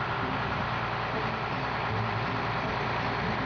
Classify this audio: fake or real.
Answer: real